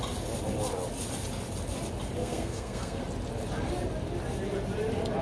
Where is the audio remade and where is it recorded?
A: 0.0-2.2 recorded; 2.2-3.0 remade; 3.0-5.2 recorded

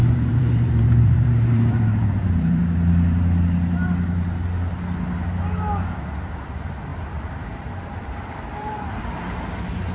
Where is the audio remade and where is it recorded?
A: 0.0-2.6 remade; 2.6-6.9 recorded; 6.9-9.5 remade; 9.5-9.9 recorded

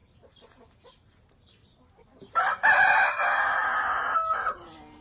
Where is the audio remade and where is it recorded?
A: 0.0-5.0 recorded

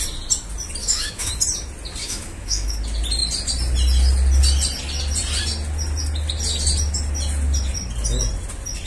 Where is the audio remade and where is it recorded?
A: 0.0-0.8 recorded; 0.8-1.3 remade; 1.3-2.0 recorded; 2.0-2.8 remade; 2.8-8.9 recorded

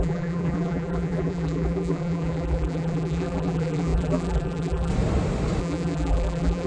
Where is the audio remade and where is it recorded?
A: 0.0-4.9 remade; 4.9-5.6 recorded; 5.6-6.7 remade

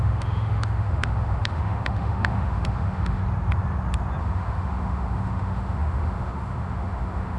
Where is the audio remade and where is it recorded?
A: 0.0-3.2 remade; 3.2-4.2 recorded; 4.2-7.4 remade